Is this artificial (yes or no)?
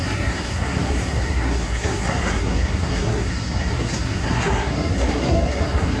yes